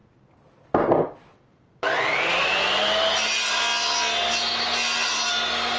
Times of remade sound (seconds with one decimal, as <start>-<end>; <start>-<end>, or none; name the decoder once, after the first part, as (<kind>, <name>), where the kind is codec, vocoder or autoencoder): none